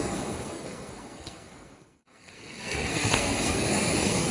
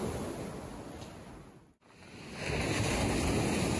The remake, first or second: first